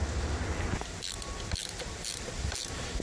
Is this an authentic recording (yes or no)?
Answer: yes